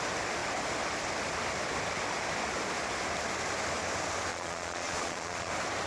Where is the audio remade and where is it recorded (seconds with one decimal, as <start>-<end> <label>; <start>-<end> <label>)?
0.0-4.3 recorded; 4.3-5.5 remade; 5.5-5.9 recorded